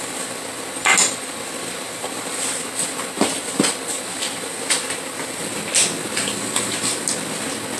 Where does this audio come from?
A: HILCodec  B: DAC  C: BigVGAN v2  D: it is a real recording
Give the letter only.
D